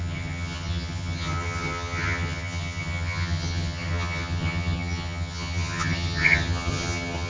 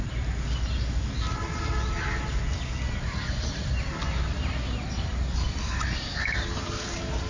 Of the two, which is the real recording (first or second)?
second